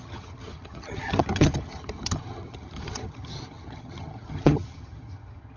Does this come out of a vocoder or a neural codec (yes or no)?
yes